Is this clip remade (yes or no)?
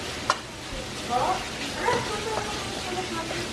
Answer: no